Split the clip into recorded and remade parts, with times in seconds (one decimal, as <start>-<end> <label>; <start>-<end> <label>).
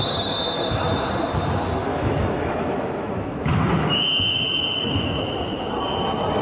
0.0-1.9 recorded; 1.9-5.7 remade; 5.7-6.4 recorded